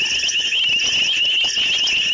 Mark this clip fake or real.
real